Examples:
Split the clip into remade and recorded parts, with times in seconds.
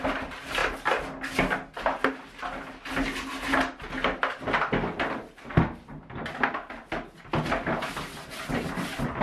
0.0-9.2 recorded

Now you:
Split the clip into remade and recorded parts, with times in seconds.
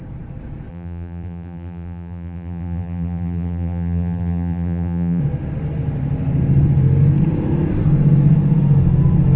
0.0-0.7 recorded; 0.7-5.2 remade; 5.2-9.4 recorded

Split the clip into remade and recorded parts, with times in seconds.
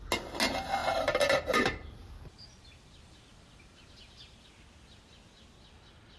0.0-0.8 recorded; 0.8-4.5 remade; 4.5-6.2 recorded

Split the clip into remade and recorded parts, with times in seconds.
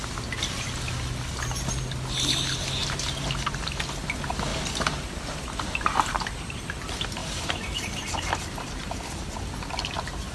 0.0-2.8 recorded; 2.8-3.3 remade; 3.3-4.5 recorded; 4.5-6.6 remade; 6.6-7.2 recorded; 7.2-8.1 remade; 8.1-10.3 recorded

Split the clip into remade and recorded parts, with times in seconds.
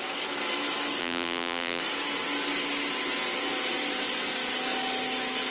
0.0-1.0 recorded; 1.0-1.8 remade; 1.8-5.5 recorded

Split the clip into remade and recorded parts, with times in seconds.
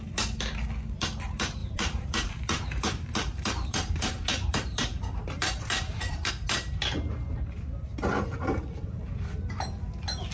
0.0-1.6 recorded; 1.6-6.3 remade; 6.3-10.3 recorded